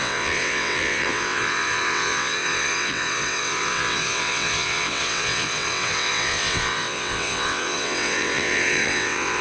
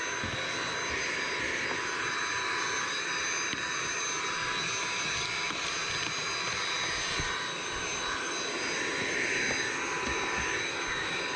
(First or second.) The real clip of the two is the second